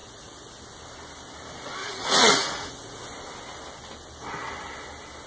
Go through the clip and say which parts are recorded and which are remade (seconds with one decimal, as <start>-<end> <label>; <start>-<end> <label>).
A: 0.0-0.6 remade; 0.6-1.8 recorded; 1.8-3.1 remade; 3.1-5.3 recorded